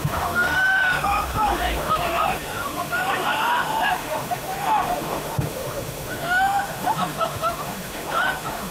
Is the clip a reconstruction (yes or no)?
yes